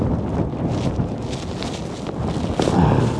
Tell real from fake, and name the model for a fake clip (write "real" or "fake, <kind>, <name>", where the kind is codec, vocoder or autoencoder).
real